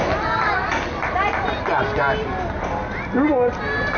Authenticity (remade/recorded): recorded